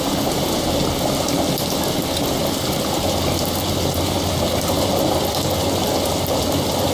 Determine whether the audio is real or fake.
real